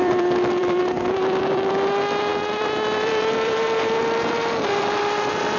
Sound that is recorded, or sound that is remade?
remade